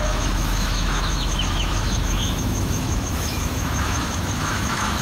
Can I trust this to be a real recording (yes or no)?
no